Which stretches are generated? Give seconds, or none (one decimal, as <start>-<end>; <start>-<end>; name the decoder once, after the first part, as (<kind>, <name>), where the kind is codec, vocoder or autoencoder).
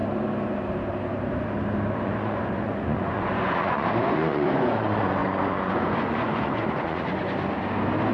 1.9-7.2 (vocoder, Vocos)